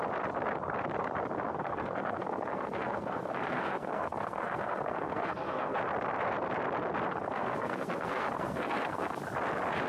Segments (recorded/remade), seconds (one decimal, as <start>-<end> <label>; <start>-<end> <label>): 0.0-1.5 recorded; 1.5-5.8 remade; 5.8-7.1 recorded; 7.1-9.2 remade; 9.2-9.9 recorded